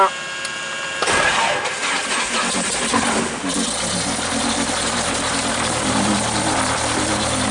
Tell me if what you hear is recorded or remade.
recorded